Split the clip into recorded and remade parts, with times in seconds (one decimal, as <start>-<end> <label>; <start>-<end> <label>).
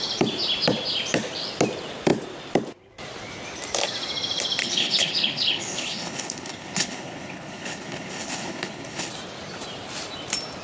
0.0-4.6 recorded; 4.6-9.1 remade; 9.1-10.6 recorded